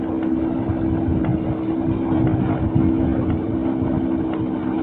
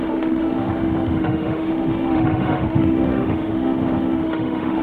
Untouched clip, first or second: first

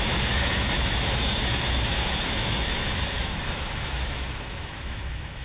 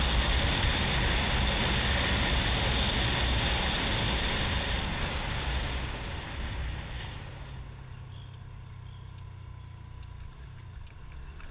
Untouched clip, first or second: second